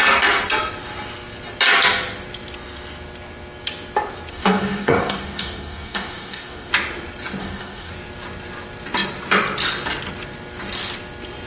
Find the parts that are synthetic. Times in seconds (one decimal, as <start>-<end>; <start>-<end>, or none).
4.3-6.7; 7.4-7.9